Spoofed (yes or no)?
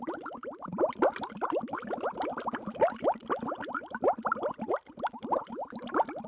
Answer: no